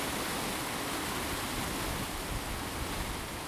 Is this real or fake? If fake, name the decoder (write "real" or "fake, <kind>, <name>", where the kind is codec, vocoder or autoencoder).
real